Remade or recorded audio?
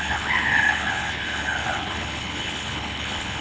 remade